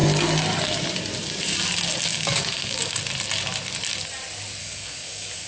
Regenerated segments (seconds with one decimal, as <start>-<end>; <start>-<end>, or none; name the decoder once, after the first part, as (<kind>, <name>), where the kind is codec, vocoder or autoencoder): 2.1-3.0 (codec, DAC); 4.6-5.5